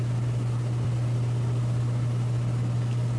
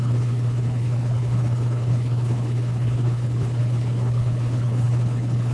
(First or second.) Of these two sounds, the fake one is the second